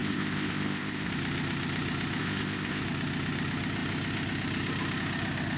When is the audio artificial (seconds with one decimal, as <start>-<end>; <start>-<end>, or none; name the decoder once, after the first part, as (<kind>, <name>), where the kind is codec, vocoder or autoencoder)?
0.0-1.1 (codec, ZipCodec); 2.2-2.8